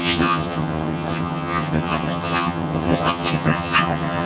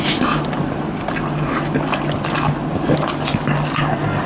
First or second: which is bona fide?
second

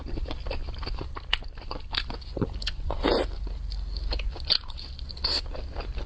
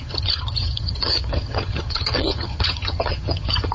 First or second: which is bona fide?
first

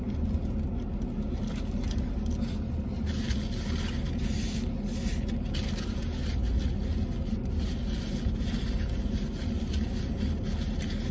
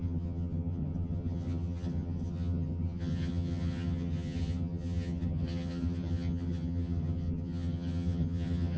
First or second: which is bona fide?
first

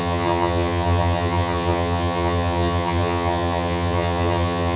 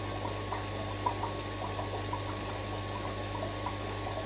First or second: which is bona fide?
second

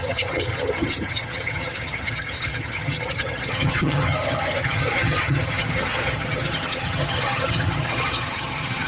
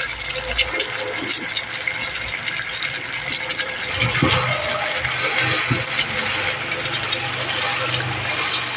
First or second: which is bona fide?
second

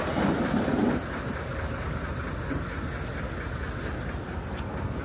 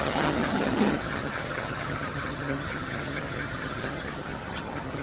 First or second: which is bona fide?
first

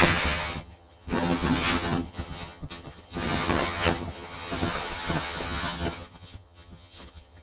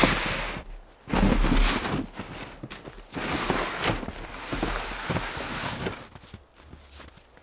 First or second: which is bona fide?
second